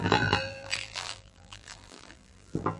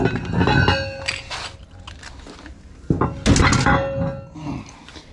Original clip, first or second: second